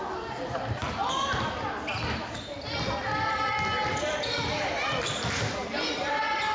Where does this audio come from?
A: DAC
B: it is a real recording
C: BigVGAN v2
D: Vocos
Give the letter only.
C